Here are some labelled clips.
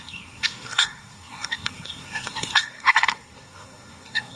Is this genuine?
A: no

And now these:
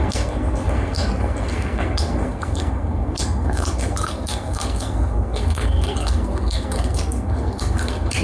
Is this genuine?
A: no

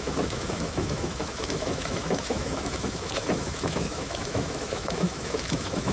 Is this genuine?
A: no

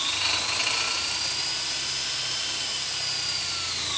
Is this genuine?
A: yes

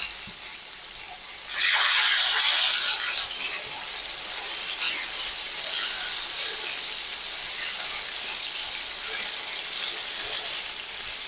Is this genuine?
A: yes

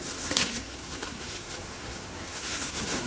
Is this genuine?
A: no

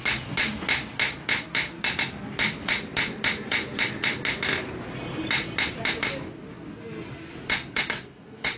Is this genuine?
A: yes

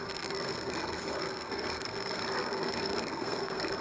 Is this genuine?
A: no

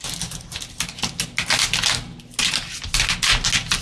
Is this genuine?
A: yes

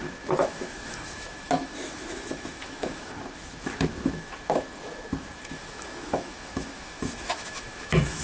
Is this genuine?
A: no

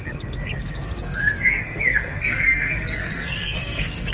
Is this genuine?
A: no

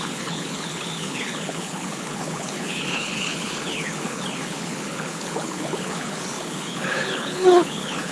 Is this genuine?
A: no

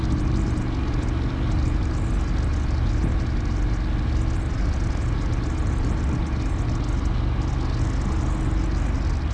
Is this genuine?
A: yes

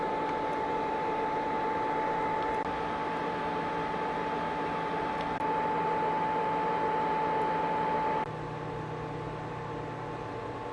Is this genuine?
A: yes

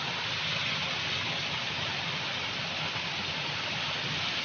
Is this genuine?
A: yes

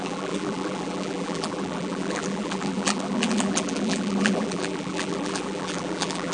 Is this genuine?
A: no